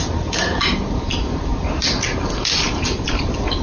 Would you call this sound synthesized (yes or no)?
no